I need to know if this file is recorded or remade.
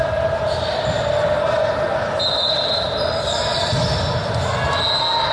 recorded